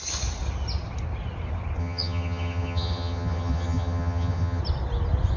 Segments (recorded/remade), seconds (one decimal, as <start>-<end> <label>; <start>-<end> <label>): 0.0-1.8 recorded; 1.8-4.6 remade; 4.6-5.4 recorded